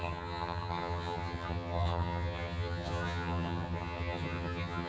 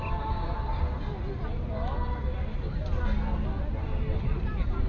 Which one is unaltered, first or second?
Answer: second